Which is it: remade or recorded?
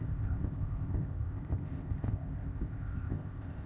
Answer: remade